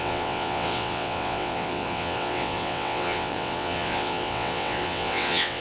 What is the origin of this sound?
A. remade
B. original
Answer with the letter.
A